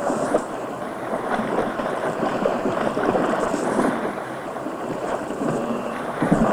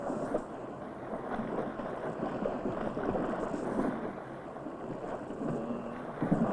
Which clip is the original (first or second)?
second